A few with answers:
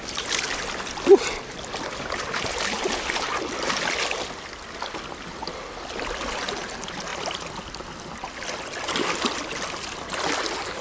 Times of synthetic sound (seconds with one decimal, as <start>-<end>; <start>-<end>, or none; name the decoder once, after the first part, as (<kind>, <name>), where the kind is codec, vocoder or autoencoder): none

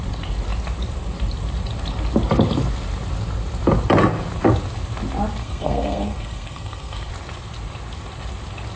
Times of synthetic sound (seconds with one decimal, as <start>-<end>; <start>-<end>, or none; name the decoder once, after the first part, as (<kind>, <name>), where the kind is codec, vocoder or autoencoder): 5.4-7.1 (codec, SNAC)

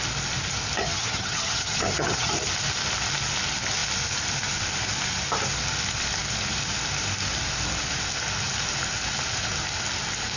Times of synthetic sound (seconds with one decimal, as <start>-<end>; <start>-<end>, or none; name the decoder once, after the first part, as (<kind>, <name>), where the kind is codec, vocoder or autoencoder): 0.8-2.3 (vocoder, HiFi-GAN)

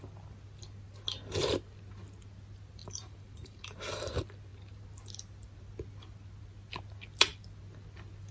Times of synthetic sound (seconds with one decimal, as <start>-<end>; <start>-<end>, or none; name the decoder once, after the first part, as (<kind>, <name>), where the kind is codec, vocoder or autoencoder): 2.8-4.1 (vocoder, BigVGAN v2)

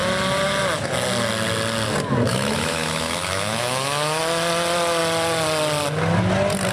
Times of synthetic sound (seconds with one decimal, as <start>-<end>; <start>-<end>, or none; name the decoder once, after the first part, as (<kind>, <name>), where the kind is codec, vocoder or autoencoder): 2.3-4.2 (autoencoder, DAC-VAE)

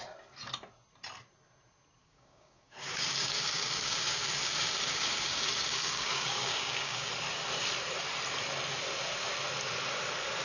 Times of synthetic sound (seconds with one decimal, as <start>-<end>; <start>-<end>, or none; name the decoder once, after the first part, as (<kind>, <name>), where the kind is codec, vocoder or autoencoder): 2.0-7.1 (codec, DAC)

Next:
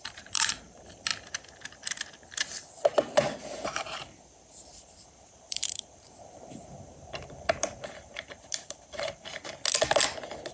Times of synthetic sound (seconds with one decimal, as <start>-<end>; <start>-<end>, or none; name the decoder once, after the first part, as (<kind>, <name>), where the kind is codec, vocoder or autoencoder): 0.0-1.1 (vocoder, BigVGAN v2); 4.7-9.3

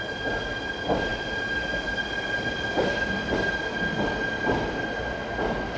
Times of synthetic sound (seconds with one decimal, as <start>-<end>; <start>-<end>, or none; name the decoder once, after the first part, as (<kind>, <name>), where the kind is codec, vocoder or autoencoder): none